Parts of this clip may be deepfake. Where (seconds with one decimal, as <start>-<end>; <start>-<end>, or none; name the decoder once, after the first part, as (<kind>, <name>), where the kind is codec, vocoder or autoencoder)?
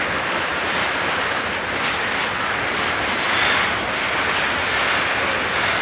none